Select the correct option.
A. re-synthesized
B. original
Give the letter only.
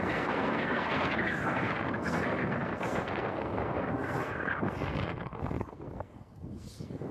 A